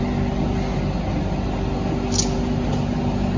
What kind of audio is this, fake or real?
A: real